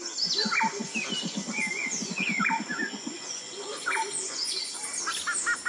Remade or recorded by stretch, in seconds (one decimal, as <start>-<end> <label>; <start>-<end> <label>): 0.0-1.4 recorded; 1.4-4.8 remade; 4.8-5.7 recorded